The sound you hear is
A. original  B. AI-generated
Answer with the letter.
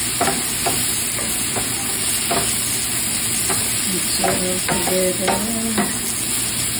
A